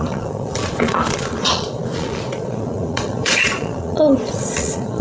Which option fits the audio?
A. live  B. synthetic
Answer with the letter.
B